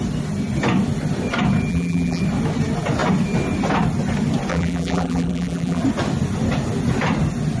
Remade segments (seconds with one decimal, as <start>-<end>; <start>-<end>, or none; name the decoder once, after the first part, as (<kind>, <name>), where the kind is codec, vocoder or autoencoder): 1.7-2.2 (vocoder, BigVGAN v2); 4.5-5.8